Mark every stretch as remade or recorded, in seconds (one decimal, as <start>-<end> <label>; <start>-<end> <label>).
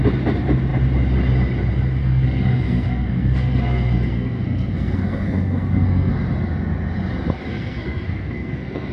0.0-2.0 recorded; 2.0-6.1 remade; 6.1-7.5 recorded; 7.5-8.9 remade